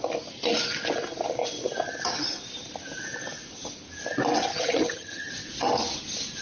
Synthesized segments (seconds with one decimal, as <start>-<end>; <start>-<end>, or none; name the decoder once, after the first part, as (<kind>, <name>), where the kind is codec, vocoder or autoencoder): 4.5-5.3 (vocoder, HiFi-GAN)